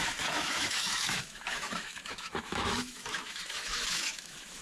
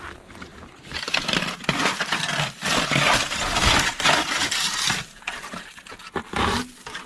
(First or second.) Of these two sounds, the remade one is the first